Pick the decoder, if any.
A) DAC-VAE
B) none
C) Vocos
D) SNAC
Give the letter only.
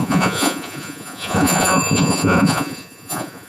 C